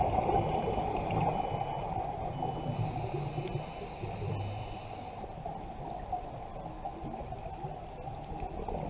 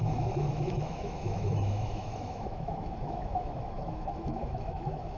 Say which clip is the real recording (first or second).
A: first